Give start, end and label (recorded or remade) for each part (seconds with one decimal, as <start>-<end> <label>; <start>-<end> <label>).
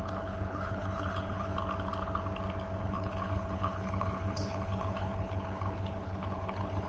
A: 0.0-1.5 remade; 1.5-2.8 recorded; 2.8-6.9 remade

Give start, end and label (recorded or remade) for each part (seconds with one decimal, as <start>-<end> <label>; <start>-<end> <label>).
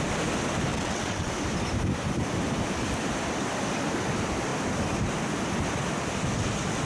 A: 0.0-0.7 recorded; 0.7-1.3 remade; 1.3-6.9 recorded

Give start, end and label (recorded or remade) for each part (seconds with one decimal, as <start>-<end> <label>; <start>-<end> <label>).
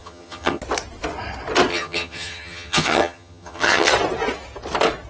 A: 0.0-0.6 remade; 0.6-1.7 recorded; 1.7-3.9 remade; 3.9-5.1 recorded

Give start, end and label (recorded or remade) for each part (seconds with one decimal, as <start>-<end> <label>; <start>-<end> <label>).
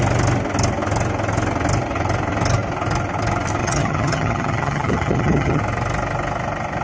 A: 0.0-3.6 recorded; 3.6-5.6 remade; 5.6-6.8 recorded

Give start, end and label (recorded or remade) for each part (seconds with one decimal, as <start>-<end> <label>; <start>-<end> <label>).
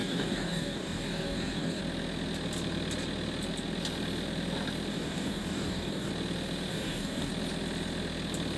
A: 0.0-1.8 remade; 1.8-4.9 recorded; 4.9-6.1 remade; 6.1-6.7 recorded; 6.7-7.3 remade; 7.3-8.6 recorded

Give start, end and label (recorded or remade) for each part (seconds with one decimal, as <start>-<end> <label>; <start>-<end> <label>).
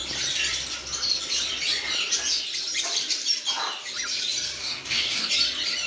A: 0.0-4.6 recorded; 4.6-5.3 remade; 5.3-5.9 recorded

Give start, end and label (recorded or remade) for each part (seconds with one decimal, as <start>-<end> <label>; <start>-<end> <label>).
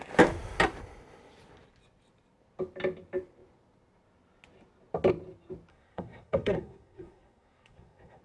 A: 0.0-5.7 recorded; 5.7-8.2 remade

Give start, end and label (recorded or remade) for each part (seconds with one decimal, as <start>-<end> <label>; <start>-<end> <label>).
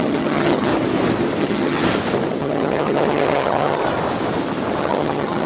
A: 0.0-0.7 remade; 0.7-1.4 recorded; 1.4-1.8 remade; 1.8-2.4 recorded; 2.4-3.8 remade; 3.8-4.8 recorded; 4.8-5.5 remade